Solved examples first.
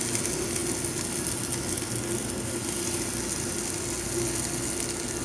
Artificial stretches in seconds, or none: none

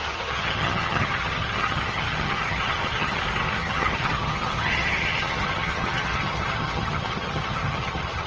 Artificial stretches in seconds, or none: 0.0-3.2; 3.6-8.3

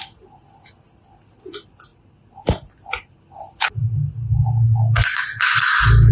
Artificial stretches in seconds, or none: none

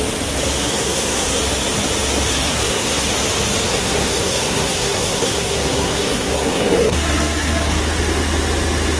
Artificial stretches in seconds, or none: 0.6-1.4; 2.3-3.1; 3.7-7.8

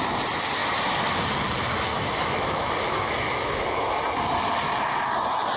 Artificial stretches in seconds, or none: 1.9-4.0

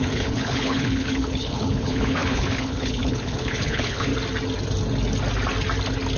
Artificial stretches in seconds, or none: 0.0-4.1

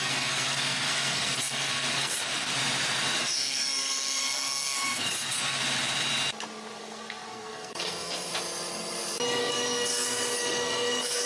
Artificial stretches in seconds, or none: 0.0-2.6; 3.2-5.6; 6.8-8.3; 9.4-11.3